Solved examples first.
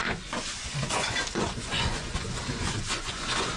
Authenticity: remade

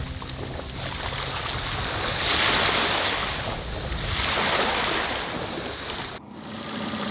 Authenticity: recorded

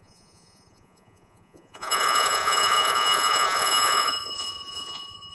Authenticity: remade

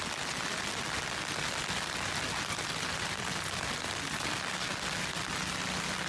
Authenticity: recorded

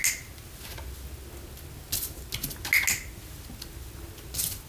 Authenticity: recorded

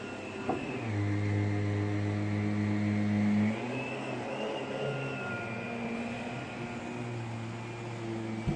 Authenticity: recorded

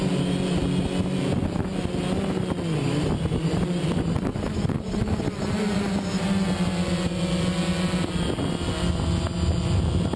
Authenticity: recorded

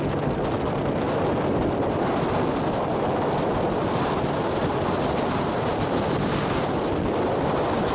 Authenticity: recorded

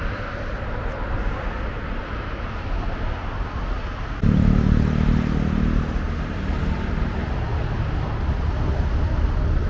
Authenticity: recorded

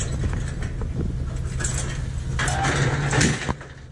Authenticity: recorded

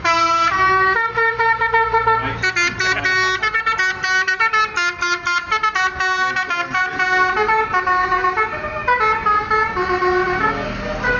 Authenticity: recorded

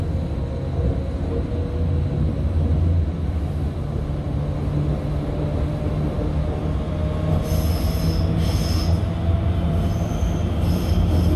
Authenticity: recorded